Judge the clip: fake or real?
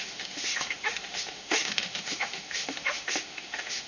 fake